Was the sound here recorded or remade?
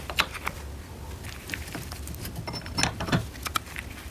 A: recorded